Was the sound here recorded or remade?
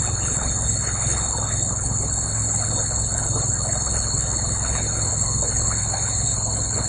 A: remade